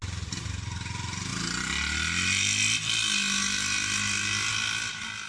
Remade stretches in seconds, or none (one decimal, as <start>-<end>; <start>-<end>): none